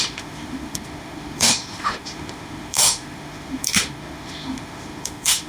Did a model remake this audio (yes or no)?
yes